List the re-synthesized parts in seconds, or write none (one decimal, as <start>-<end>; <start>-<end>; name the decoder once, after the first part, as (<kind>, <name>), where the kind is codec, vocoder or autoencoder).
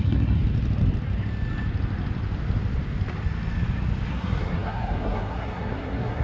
0.0-0.4 (codec, SNAC); 4.1-6.2